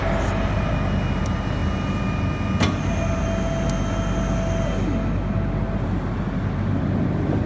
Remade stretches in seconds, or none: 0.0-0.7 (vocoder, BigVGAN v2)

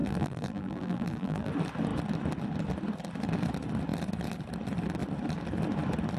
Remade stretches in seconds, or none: 0.0-1.5 (vocoder, BigVGAN v2)

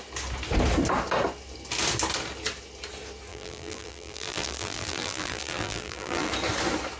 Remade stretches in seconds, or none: 3.3-6.3 (vocoder, BigVGAN v2)

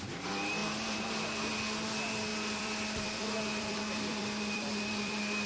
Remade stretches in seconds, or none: 0.6-1.5 (vocoder, BigVGAN v2); 2.3-5.1

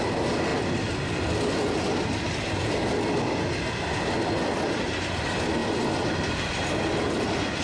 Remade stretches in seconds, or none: none